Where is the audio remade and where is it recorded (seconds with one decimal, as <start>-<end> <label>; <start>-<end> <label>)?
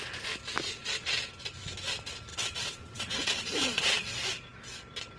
0.0-2.3 recorded; 2.3-3.8 remade; 3.8-5.2 recorded